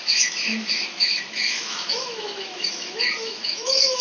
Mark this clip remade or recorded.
remade